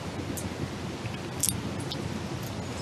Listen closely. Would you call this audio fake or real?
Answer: real